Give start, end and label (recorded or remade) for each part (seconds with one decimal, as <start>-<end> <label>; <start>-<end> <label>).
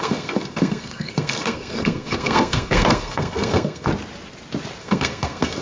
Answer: 0.0-3.9 remade; 3.9-4.8 recorded; 4.8-5.6 remade